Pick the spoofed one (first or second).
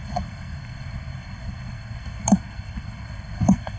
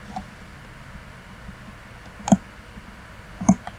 first